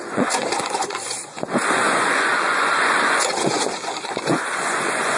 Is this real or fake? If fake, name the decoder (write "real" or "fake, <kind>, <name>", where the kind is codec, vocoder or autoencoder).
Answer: fake, vocoder, Vocos